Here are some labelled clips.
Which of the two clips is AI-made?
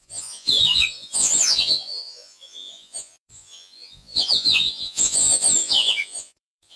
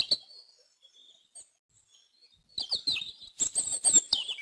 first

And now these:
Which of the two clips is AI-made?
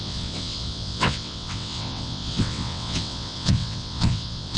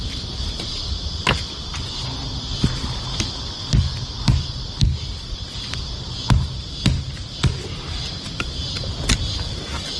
first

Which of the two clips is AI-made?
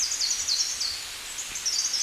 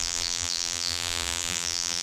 second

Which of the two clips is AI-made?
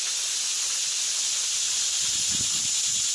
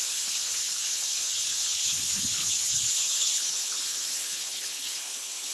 second